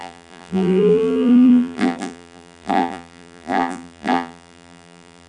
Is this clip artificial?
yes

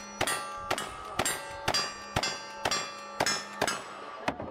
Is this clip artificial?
no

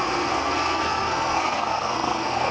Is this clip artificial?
yes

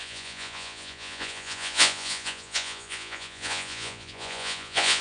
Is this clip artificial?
yes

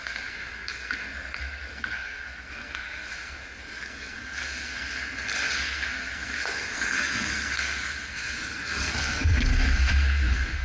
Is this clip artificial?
yes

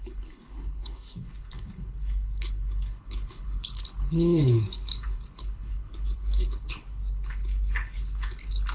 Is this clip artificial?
yes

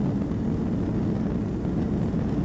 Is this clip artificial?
no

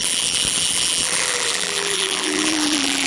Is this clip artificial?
yes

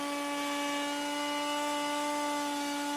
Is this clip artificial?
no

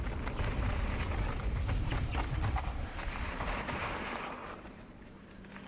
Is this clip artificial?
no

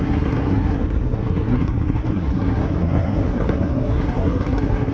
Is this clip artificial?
yes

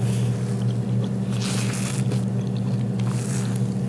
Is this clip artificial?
no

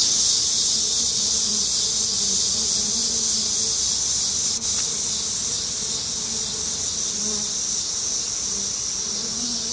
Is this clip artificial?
no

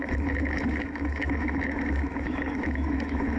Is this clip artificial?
yes